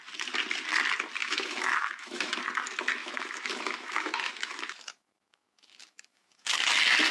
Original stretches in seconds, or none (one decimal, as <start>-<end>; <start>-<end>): 0.0-1.2; 2.3-3.0; 6.6-7.1